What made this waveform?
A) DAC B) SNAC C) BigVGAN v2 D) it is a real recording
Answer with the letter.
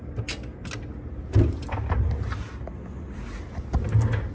D